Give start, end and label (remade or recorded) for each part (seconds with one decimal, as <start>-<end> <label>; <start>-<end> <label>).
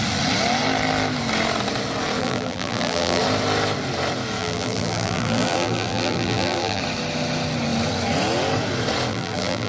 0.0-2.2 recorded; 2.2-3.2 remade; 3.2-4.4 recorded; 4.4-6.8 remade; 6.8-9.1 recorded; 9.1-9.7 remade